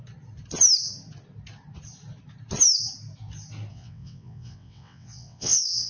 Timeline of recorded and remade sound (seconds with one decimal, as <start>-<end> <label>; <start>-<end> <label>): 0.0-3.7 recorded; 3.7-5.9 remade